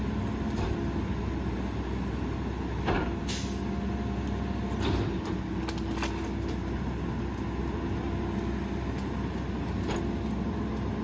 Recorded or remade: recorded